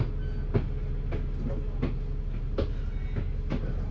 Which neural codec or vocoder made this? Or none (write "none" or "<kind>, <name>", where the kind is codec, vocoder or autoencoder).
none